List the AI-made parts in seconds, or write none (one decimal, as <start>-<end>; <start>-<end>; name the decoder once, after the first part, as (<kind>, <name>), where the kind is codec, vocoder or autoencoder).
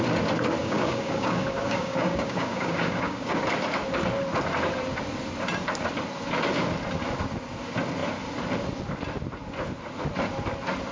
0.6-3.4 (codec, DAC)